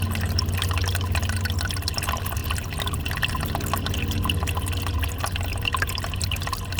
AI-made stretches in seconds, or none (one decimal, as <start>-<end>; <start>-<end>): none